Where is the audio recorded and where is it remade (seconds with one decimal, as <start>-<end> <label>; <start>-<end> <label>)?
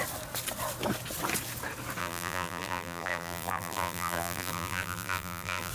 0.0-2.0 recorded; 2.0-5.7 remade